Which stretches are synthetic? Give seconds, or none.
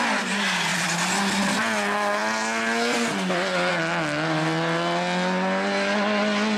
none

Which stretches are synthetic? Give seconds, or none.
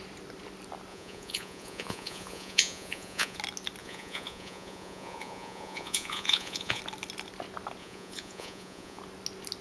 0.9-3.4 (vocoder, Vocos); 3.8-6.8; 7.8-9.0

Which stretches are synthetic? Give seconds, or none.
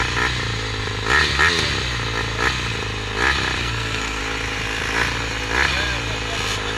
3.6-4.2 (codec, SNAC)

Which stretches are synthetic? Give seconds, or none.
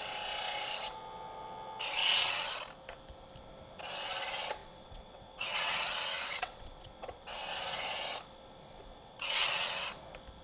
2.0-2.5 (vocoder, WaveNeXt); 4.6-7.5; 8.9-9.9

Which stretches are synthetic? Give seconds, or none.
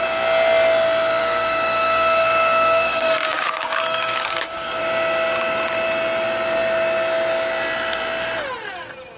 1.2-4.8 (codec, DAC)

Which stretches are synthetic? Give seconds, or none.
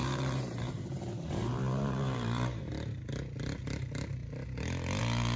0.0-2.7 (vocoder, BigVGAN v2)